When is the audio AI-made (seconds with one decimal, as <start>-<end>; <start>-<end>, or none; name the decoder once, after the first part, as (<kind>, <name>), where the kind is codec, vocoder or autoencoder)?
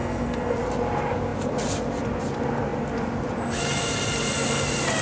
0.0-0.6 (codec, SNAC)